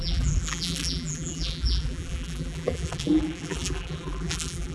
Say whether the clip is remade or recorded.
remade